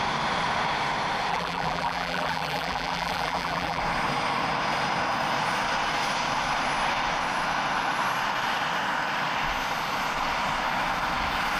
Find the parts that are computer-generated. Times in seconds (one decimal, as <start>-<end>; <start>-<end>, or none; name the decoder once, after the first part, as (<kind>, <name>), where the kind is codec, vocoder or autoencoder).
1.3-3.8 (vocoder, BigVGAN v2)